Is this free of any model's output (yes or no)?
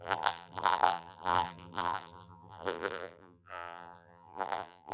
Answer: no